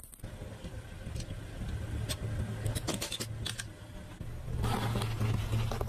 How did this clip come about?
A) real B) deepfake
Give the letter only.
A